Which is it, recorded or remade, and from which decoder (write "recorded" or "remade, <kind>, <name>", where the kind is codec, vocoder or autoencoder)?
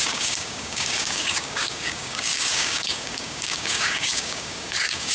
remade, codec, DAC